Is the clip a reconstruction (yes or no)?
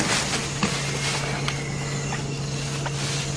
no